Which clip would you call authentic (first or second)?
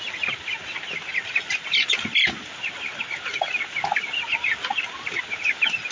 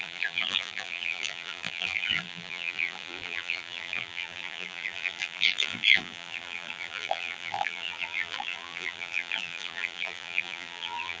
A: first